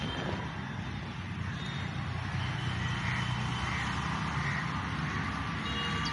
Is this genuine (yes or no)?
yes